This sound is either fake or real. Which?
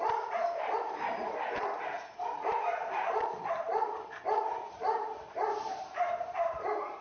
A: fake